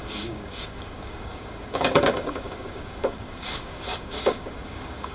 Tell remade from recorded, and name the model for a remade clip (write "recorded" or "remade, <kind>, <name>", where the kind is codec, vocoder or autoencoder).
remade, codec, DAC